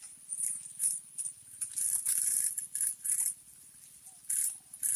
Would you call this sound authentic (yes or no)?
no